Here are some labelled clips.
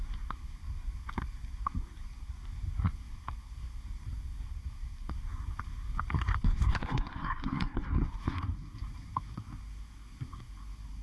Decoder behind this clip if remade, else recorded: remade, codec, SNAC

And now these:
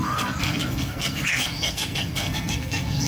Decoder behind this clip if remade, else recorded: remade, codec, SNAC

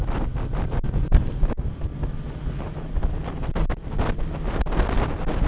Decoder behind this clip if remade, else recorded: recorded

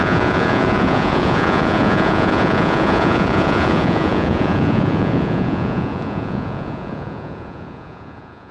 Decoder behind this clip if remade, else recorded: remade, vocoder, Vocos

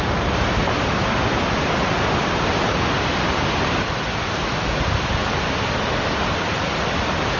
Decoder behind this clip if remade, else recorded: recorded